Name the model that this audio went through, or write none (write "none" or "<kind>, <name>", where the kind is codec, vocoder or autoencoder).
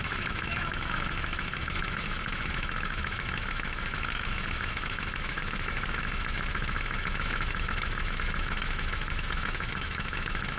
autoencoder, DAC-VAE